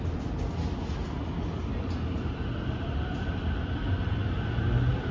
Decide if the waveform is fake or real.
real